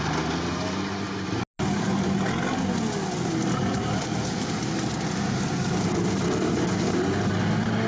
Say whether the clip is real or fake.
real